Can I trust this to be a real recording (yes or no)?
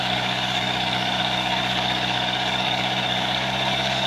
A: no